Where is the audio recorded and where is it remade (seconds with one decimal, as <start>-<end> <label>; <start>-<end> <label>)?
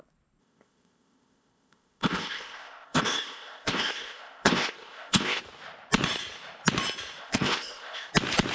0.0-0.4 recorded; 0.4-5.4 remade; 5.4-7.2 recorded; 7.2-8.1 remade; 8.1-8.5 recorded